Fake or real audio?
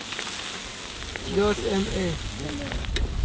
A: real